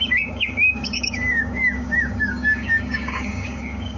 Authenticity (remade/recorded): remade